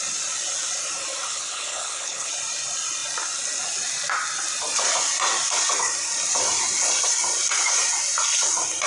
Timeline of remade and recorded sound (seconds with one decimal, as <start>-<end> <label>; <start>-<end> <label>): 0.0-1.3 recorded; 1.3-2.3 remade; 2.3-8.9 recorded